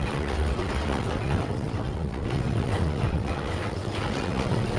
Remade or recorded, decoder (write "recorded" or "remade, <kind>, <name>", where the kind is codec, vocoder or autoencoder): remade, vocoder, WaveNeXt